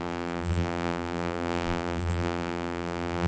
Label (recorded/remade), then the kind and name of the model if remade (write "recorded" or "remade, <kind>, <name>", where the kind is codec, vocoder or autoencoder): remade, vocoder, BigVGAN v2